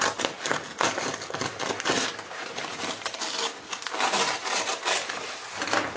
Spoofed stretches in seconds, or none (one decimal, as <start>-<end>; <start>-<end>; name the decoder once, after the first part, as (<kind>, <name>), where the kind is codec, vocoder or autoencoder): none